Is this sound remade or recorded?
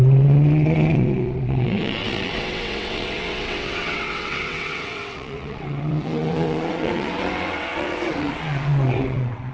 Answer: remade